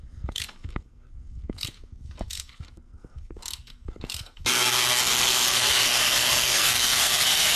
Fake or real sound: fake